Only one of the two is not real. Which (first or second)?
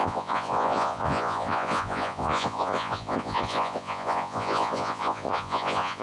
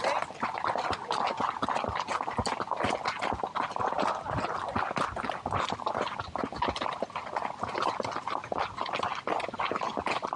first